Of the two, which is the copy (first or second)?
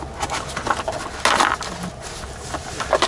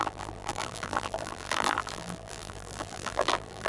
second